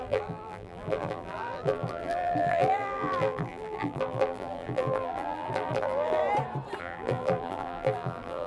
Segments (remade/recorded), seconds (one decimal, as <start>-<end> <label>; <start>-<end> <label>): 0.0-6.2 remade; 6.2-6.8 recorded; 6.8-8.5 remade